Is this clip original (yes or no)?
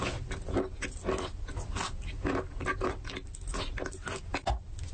yes